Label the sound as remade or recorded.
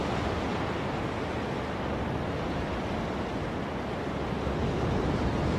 recorded